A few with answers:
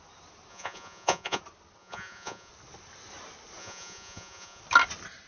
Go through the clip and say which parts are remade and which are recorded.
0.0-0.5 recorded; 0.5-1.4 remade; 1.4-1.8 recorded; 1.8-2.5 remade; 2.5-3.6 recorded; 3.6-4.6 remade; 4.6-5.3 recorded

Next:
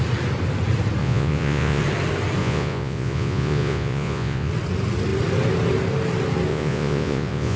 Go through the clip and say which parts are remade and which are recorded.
0.0-1.0 recorded; 1.0-1.8 remade; 1.8-2.4 recorded; 2.4-4.5 remade; 4.5-6.5 recorded; 6.5-7.6 remade

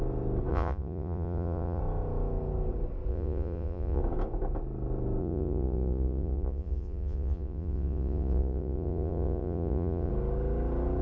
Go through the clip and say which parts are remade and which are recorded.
0.0-0.5 recorded; 0.5-1.8 remade; 1.8-3.1 recorded; 3.1-4.0 remade; 4.0-5.2 recorded; 5.2-10.1 remade; 10.1-11.0 recorded

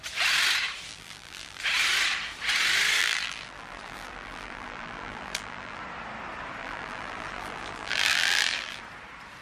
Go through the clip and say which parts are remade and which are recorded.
0.0-0.9 recorded; 0.9-1.6 remade; 1.6-3.0 recorded; 3.0-5.8 remade; 5.8-6.6 recorded; 6.6-8.8 remade; 8.8-9.4 recorded

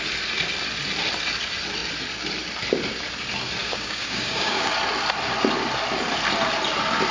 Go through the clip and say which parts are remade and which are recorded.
0.0-3.6 recorded; 3.6-4.7 remade; 4.7-7.1 recorded